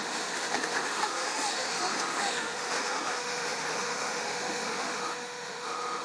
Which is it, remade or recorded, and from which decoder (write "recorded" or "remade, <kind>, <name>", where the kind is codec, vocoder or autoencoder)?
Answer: remade, autoencoder, DAC-VAE